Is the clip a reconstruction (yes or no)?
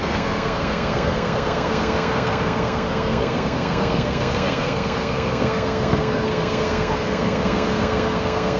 yes